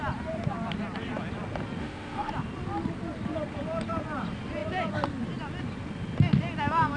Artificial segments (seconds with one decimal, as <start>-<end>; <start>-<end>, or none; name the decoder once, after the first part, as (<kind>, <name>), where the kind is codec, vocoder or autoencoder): 1.8-2.3 (autoencoder, DAC-VAE)